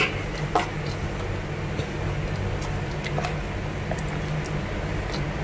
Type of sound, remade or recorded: recorded